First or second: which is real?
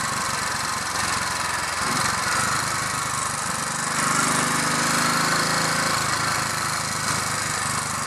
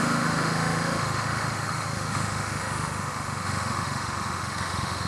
first